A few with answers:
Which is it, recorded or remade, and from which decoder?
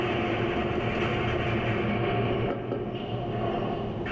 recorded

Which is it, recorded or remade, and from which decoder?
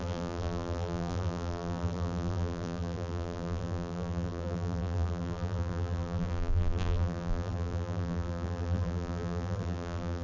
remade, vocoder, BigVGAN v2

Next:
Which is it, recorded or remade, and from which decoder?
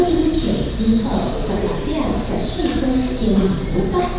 remade, vocoder, BigVGAN v2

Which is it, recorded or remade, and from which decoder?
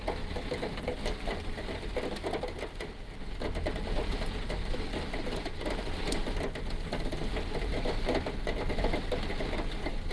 recorded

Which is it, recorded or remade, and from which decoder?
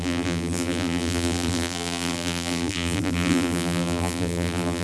remade, vocoder, BigVGAN v2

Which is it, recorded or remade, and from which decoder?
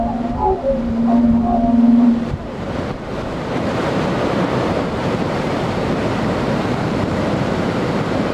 remade, vocoder, BigVGAN v2